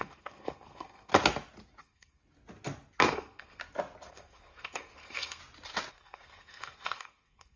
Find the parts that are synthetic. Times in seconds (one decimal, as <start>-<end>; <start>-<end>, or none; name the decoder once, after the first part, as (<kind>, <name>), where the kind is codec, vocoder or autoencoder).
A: 0.0-1.1 (codec, SNAC); 1.8-2.2; 3.1-3.6; 4.1-5.4; 5.9-7.6